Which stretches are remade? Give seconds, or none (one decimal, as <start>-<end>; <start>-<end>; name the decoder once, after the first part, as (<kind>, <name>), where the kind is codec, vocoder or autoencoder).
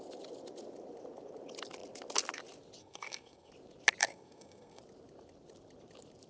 2.8-3.5 (codec, SNAC); 4.0-4.8